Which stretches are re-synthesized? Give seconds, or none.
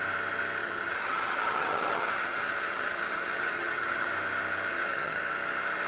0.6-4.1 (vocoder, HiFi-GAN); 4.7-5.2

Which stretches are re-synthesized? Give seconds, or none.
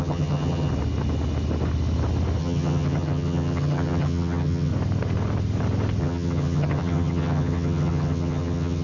0.0-0.7 (vocoder, HiFi-GAN); 2.4-4.7; 6.0-8.8